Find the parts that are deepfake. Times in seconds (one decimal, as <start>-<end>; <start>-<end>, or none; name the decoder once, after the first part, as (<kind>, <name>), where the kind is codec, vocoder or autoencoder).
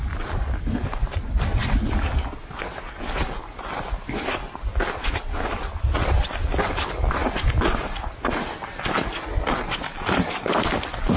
1.0-1.6 (vocoder, BigVGAN v2); 6.6-7.2; 9.1-11.2